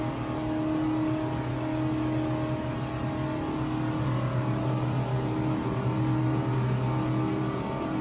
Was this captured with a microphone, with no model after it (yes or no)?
yes